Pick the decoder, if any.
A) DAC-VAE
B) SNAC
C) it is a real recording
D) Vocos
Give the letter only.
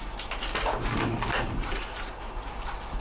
C